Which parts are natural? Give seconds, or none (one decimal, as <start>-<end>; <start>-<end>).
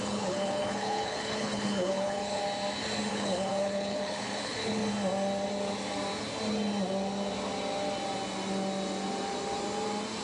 2.4-3.1; 4.8-10.2